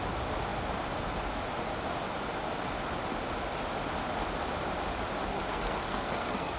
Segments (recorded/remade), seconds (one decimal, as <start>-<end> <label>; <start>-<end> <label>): 0.0-5.3 recorded; 5.3-6.6 remade

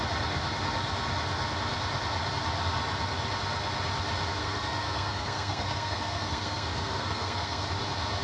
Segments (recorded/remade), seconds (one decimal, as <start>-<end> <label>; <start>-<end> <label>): 0.0-4.4 recorded; 4.4-7.7 remade; 7.7-8.2 recorded

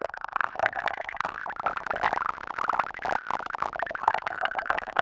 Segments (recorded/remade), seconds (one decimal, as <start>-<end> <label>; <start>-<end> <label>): 0.0-1.4 remade; 1.4-4.0 recorded; 4.0-5.0 remade

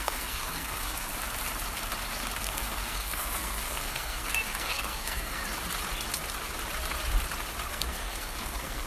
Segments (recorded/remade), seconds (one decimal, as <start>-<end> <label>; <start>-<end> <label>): 0.0-1.1 remade; 1.1-2.4 recorded; 2.4-5.4 remade; 5.4-7.7 recorded; 7.7-8.9 remade